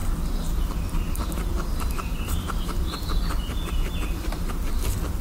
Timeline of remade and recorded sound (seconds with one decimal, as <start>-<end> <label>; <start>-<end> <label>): 0.0-5.2 recorded